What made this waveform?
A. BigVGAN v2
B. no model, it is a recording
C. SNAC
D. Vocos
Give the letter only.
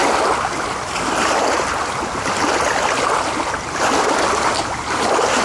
B